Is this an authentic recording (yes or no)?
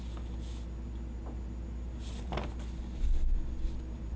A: yes